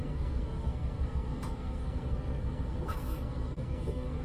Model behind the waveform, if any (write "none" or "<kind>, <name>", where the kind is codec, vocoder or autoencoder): codec, SNAC